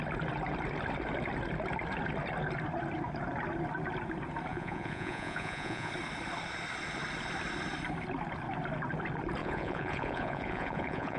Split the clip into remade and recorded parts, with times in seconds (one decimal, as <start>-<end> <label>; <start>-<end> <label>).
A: 0.0-4.5 recorded; 4.5-5.9 remade; 5.9-9.4 recorded; 9.4-11.2 remade